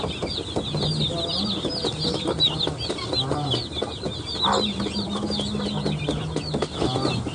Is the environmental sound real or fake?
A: real